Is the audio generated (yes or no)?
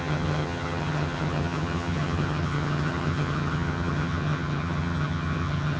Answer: yes